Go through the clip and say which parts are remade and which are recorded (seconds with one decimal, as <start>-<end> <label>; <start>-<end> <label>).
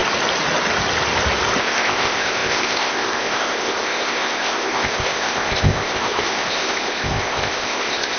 0.0-1.6 recorded; 1.6-8.2 remade